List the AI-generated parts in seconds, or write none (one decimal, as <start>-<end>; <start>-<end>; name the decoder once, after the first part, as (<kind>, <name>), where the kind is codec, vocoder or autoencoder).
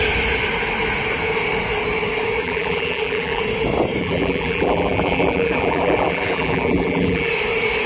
2.4-3.4 (vocoder, BigVGAN v2); 4.0-7.3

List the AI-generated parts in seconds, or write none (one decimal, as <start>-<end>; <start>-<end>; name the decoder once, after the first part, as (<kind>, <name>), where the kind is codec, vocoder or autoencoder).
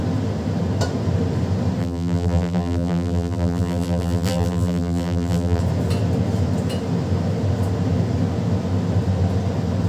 1.8-5.6 (vocoder, BigVGAN v2)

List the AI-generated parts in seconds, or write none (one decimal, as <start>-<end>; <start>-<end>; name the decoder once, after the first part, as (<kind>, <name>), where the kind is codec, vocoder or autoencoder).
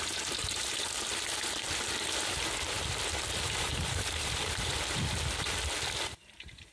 3.7-4.8 (vocoder, BigVGAN v2)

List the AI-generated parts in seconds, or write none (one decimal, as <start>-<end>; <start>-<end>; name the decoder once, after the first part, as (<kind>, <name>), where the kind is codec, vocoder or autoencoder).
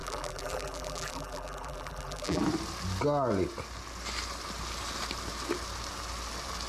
0.0-2.4 (vocoder, BigVGAN v2)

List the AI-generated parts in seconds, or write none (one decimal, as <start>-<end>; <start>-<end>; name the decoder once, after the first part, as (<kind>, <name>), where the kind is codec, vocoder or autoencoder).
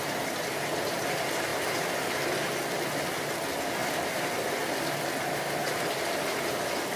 1.5-2.2 (vocoder, BigVGAN v2); 3.8-5.1; 5.6-6.2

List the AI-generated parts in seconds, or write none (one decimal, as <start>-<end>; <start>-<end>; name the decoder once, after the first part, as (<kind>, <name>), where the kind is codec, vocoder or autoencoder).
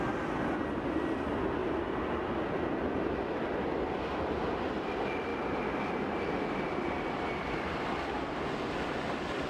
1.6-2.1 (vocoder, BigVGAN v2)